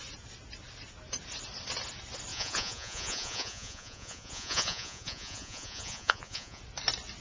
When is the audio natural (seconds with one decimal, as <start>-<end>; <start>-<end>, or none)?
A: 0.0-2.3; 6.6-7.2